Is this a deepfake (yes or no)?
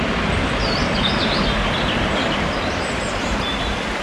no